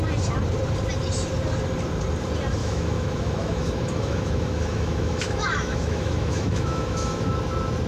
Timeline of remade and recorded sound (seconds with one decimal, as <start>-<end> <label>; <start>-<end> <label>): 0.0-2.6 recorded; 2.6-7.3 remade; 7.3-7.9 recorded